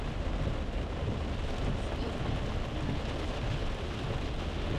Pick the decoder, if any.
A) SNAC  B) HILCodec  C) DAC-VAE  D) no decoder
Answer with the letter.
D